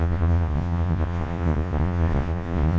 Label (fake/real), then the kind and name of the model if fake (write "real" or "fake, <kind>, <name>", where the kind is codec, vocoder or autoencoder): fake, vocoder, Vocos